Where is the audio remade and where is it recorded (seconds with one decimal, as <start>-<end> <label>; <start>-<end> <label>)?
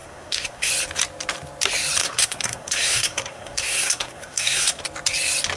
0.0-0.7 remade; 0.7-2.0 recorded; 2.0-4.8 remade; 4.8-5.6 recorded